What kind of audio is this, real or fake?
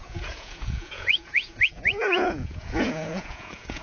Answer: fake